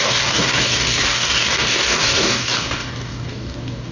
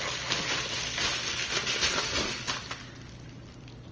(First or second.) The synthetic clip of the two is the first